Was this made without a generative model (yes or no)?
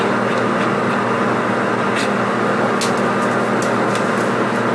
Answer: yes